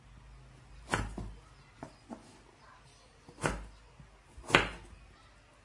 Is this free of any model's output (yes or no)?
yes